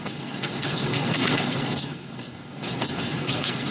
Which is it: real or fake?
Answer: fake